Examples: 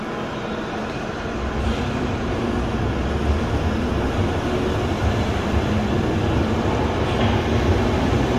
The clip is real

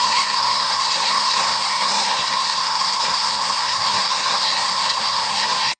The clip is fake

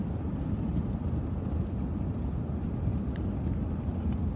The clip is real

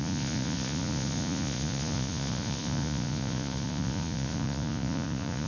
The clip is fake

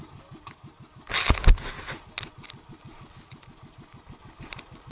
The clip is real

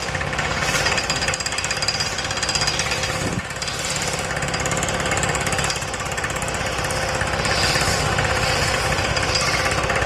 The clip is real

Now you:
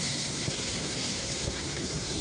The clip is fake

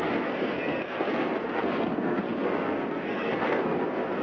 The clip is fake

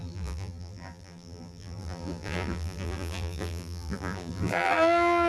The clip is fake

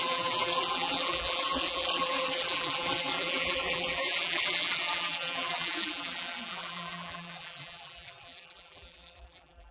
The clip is fake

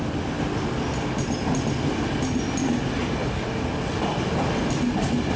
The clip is real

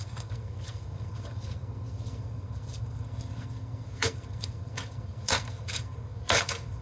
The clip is fake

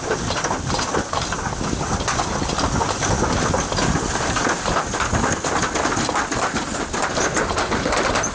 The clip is real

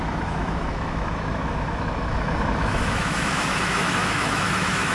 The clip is fake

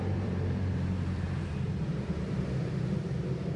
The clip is fake